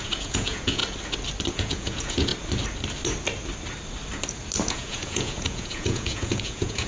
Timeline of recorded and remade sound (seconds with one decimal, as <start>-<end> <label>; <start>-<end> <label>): 0.0-0.8 remade; 0.8-1.5 recorded; 1.5-2.3 remade; 2.3-4.7 recorded; 4.7-6.9 remade